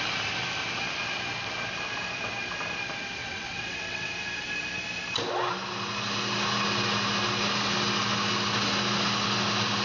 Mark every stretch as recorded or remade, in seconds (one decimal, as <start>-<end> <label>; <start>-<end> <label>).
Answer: 0.0-3.2 recorded; 3.2-4.1 remade; 4.1-9.8 recorded